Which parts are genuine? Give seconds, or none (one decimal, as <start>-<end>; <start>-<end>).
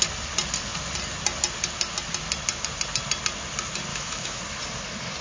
0.0-3.9; 4.4-5.2